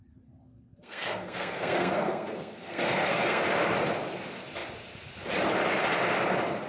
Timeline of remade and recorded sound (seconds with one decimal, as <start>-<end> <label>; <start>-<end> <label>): 0.0-0.4 recorded; 0.4-3.4 remade; 3.4-6.7 recorded